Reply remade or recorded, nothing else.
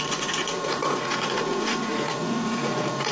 remade